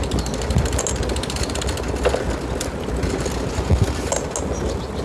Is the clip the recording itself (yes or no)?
yes